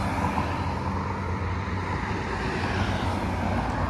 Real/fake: real